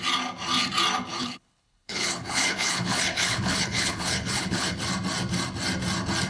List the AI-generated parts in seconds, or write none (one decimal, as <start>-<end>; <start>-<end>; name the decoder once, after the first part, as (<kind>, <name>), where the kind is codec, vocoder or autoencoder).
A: 1.1-4.8 (codec, HILCodec)